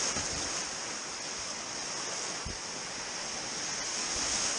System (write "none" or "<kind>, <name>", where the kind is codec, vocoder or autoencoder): none